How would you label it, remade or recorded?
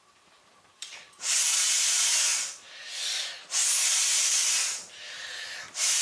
remade